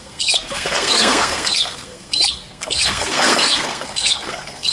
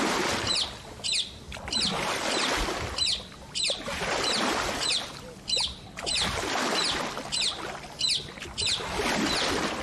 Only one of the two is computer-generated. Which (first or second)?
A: first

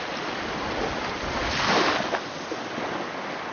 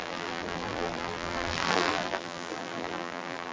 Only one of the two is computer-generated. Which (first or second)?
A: second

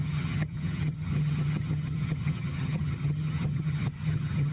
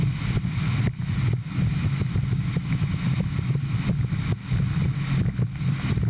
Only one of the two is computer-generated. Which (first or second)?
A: first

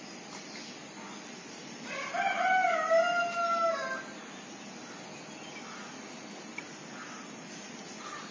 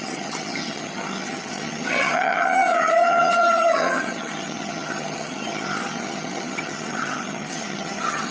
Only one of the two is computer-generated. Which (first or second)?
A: second